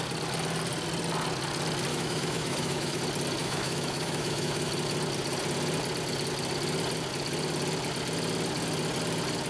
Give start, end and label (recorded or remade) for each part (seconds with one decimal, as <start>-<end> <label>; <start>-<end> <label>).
0.0-1.9 recorded; 1.9-3.0 remade; 3.0-3.4 recorded; 3.4-4.7 remade; 4.7-9.5 recorded

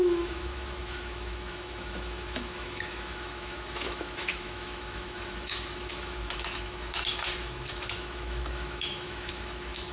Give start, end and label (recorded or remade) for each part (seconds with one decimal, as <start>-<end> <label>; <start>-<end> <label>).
0.0-9.9 remade

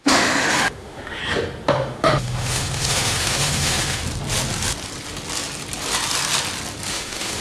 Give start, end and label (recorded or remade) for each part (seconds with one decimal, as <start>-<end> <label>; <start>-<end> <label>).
0.0-1.2 remade; 1.2-1.7 recorded; 1.7-4.0 remade; 4.0-6.9 recorded; 6.9-7.4 remade

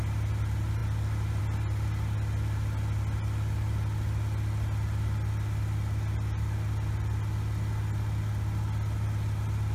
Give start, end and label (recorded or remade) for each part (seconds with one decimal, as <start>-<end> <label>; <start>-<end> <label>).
0.0-9.7 recorded

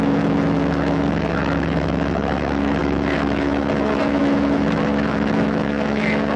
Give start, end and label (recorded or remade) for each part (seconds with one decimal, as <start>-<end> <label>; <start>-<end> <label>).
0.0-6.4 remade